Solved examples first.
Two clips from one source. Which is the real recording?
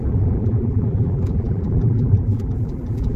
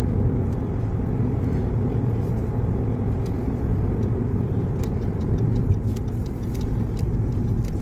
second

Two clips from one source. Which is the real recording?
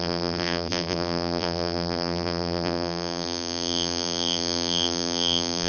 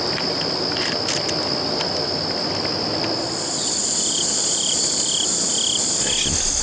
second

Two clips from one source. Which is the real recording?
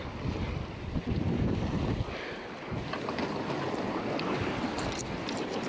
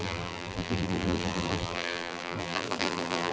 first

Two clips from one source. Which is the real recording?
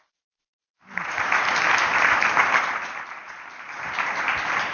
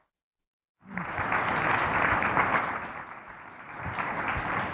second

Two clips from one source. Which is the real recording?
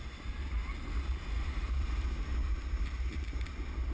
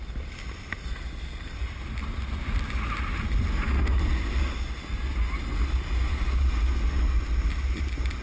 second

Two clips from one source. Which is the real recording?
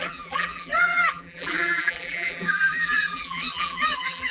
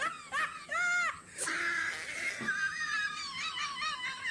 second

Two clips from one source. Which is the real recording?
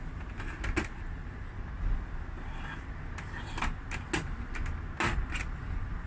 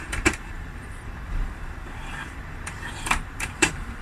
first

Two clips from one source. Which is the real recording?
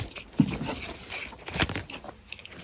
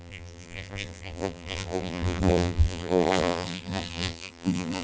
first